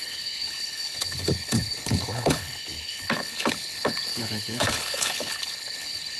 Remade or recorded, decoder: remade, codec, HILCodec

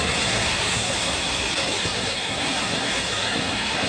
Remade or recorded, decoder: remade, codec, SNAC